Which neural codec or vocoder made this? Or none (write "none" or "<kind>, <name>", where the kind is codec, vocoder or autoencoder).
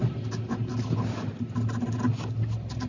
none